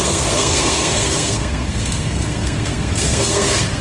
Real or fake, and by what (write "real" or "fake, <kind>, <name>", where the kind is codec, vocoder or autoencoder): fake, codec, SNAC